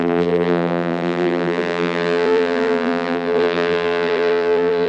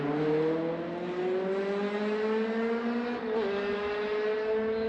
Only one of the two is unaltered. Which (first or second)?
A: second